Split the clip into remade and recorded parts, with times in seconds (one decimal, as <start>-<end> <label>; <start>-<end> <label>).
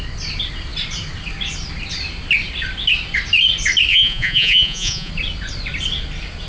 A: 0.0-3.9 recorded; 3.9-5.1 remade; 5.1-6.5 recorded